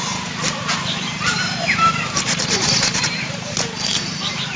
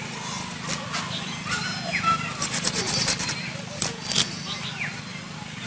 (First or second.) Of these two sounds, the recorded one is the second